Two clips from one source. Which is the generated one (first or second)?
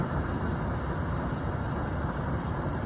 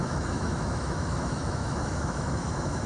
second